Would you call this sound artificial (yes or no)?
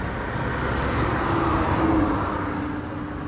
no